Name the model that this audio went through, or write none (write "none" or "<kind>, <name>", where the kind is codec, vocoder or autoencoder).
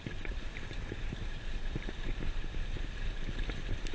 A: vocoder, BigVGAN v2